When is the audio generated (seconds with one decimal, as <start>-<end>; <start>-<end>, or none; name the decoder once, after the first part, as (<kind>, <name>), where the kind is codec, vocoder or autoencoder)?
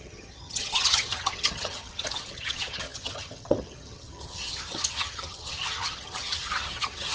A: 0.0-7.1 (vocoder, HiFi-GAN)